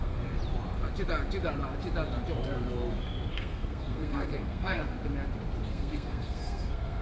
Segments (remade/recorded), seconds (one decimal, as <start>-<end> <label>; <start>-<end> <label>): 0.0-0.4 remade; 0.4-3.3 recorded; 3.3-4.9 remade; 4.9-5.7 recorded; 5.7-7.0 remade